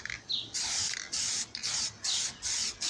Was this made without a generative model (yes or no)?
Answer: yes